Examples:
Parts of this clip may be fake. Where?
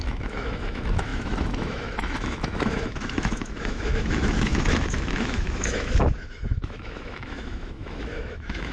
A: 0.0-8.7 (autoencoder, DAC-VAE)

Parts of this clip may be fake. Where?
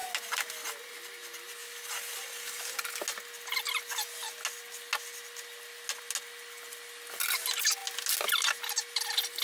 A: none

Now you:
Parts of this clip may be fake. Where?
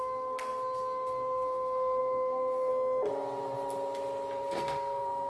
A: 0.0-2.7 (codec, SNAC); 4.5-5.3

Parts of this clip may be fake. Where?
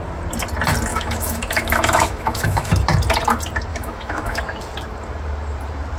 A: 0.9-2.7 (autoencoder, DAC-VAE); 3.7-4.4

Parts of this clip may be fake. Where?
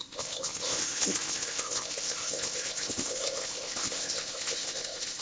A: 0.0-5.2 (codec, ZipCodec)